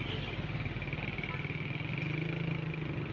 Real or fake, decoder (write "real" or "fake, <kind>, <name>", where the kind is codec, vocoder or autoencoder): real